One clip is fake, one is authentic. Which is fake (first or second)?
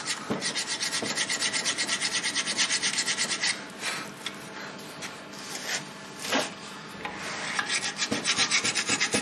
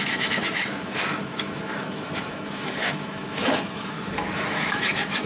second